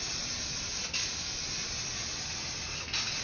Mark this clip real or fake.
real